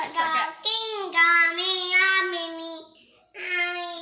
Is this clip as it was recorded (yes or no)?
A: yes